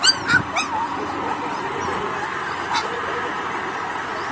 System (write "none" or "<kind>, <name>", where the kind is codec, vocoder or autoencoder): none